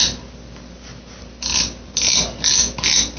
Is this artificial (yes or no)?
no